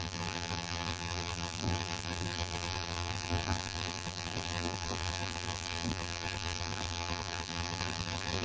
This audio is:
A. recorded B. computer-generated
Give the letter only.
B